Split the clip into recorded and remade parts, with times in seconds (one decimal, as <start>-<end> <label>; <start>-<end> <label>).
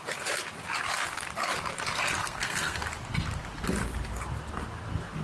0.0-2.2 recorded; 2.2-2.8 remade; 2.8-5.2 recorded